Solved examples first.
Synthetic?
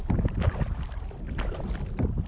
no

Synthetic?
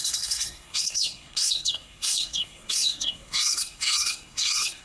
yes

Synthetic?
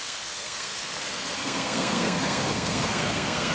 yes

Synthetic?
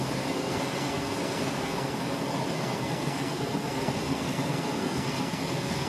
yes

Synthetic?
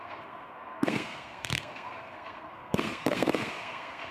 yes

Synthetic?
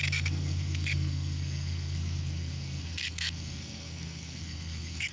yes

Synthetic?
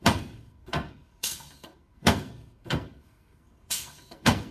yes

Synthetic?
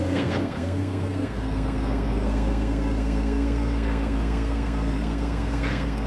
yes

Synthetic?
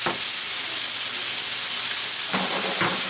no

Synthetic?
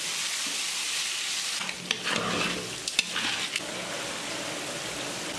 no